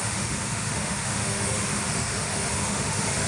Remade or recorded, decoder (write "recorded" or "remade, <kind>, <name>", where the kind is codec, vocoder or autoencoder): remade, autoencoder, DAC-VAE